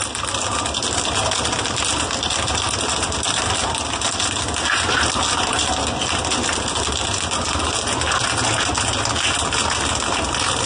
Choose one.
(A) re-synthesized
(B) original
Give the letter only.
B